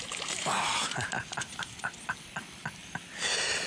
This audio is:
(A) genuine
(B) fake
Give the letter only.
A